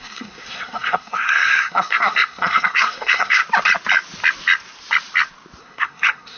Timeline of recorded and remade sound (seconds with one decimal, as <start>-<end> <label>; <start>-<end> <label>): 0.0-3.4 remade; 3.4-5.6 recorded; 5.6-6.4 remade